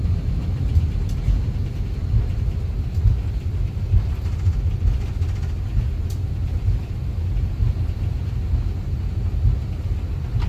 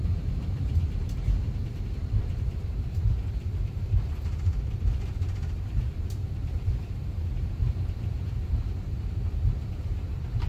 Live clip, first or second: first